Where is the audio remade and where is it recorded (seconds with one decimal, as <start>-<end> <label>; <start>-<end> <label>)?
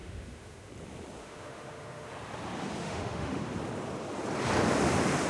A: 0.0-0.7 remade; 0.7-1.2 recorded; 1.2-2.1 remade; 2.1-2.8 recorded; 2.8-3.4 remade; 3.4-5.3 recorded